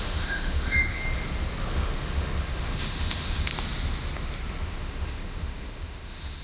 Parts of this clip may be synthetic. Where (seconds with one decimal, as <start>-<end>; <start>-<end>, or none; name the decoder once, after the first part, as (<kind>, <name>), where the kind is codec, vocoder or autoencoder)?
0.0-1.0 (autoencoder, DAC-VAE); 1.7-3.5; 4.6-6.4